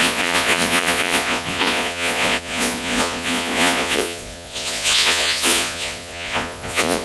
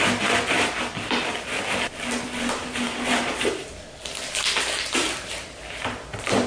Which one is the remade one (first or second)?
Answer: first